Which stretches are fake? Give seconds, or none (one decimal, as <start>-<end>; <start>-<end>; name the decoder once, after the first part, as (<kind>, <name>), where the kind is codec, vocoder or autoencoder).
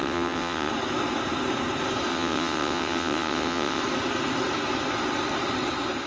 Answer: 0.0-0.7 (vocoder, WaveNeXt); 2.1-3.8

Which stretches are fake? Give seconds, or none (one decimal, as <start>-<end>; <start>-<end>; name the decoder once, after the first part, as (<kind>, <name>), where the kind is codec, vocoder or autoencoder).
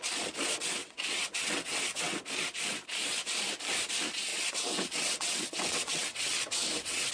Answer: 0.8-2.2 (vocoder, WaveNeXt); 4.3-7.1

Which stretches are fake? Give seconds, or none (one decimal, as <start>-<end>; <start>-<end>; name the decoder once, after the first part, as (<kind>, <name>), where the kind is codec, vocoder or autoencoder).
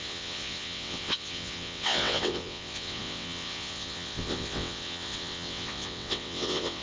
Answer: 0.0-6.8 (vocoder, WaveNeXt)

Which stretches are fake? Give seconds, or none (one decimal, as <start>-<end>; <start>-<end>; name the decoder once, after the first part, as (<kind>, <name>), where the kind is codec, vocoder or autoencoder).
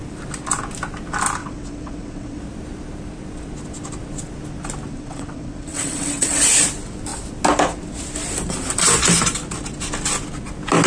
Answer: 1.4-2.4 (vocoder, WaveNeXt); 4.9-6.4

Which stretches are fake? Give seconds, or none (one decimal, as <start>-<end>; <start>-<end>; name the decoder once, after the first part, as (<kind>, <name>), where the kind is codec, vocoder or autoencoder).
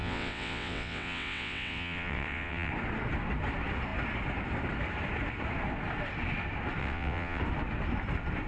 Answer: 0.0-2.7 (vocoder, WaveNeXt); 6.8-7.4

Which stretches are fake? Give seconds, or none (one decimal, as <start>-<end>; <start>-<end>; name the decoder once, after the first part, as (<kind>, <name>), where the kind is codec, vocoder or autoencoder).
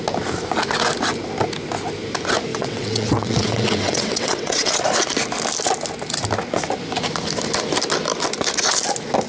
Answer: 2.5-4.8 (vocoder, WaveNeXt)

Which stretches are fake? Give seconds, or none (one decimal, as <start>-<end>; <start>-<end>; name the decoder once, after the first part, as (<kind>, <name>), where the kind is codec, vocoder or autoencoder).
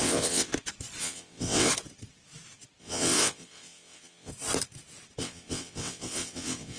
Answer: 0.0-0.5 (vocoder, WaveNeXt); 1.0-1.7; 2.8-4.3; 5.2-6.8